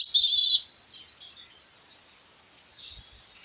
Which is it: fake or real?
real